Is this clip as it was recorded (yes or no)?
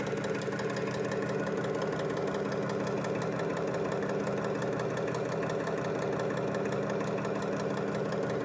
yes